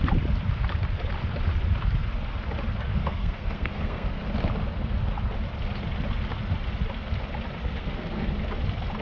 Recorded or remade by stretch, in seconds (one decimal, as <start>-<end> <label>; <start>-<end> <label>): 0.0-2.9 recorded; 2.9-4.2 remade; 4.2-7.6 recorded; 7.6-8.3 remade; 8.3-9.0 recorded